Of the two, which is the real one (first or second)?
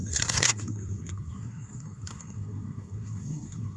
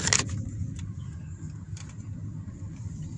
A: second